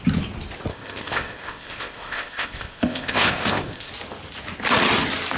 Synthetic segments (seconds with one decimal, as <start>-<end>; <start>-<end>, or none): 0.7-3.9